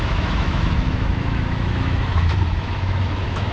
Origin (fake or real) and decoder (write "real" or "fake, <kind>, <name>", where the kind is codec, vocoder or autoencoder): fake, autoencoder, DAC-VAE